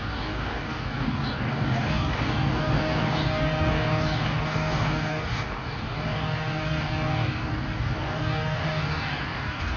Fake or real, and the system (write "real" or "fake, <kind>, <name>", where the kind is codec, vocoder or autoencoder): fake, codec, DAC